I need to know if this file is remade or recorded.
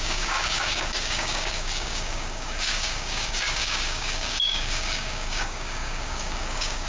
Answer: remade